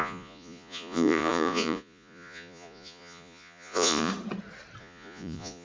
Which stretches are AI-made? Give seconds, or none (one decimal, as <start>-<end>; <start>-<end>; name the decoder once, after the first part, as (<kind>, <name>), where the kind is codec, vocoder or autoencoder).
0.0-4.1 (vocoder, Vocos); 4.8-5.6